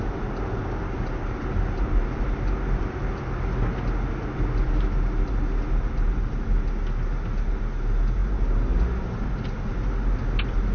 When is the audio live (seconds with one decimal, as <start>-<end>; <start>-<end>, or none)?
0.0-10.7